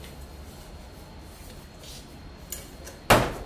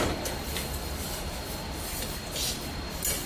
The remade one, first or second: second